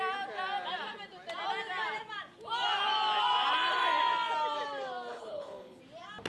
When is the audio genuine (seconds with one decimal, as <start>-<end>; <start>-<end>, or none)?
0.0-5.1; 5.8-6.3